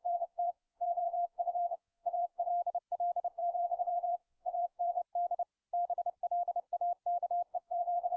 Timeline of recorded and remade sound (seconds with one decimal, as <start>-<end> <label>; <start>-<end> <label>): 0.0-2.5 remade; 2.5-3.3 recorded; 3.3-5.0 remade; 5.0-7.5 recorded; 7.5-8.2 remade